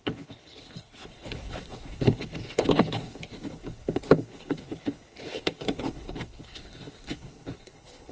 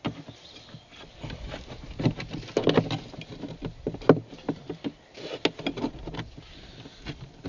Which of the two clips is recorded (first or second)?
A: second